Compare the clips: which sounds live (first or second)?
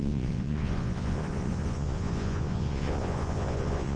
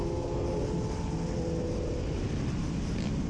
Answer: second